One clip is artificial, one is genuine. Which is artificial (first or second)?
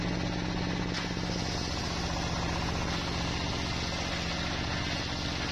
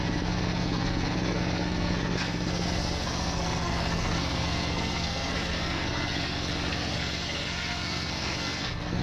second